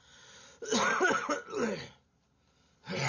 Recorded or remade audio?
recorded